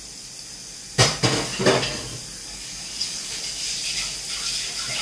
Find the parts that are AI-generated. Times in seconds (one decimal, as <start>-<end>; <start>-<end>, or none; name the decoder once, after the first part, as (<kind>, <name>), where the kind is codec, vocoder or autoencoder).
2.4-3.4 (codec, DAC)